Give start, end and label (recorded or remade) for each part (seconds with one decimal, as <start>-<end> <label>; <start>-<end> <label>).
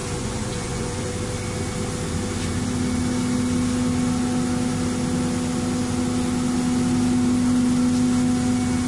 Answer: 0.0-1.1 remade; 1.1-8.9 recorded